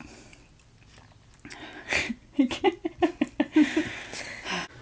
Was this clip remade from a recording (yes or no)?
no